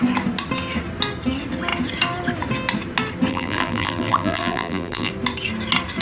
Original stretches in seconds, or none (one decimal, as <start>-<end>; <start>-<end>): 0.0-3.3; 5.1-6.0